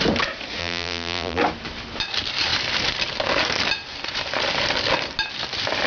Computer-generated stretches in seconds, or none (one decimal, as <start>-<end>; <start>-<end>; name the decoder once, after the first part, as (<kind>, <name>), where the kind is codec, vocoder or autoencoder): 0.6-1.4 (vocoder, BigVGAN v2)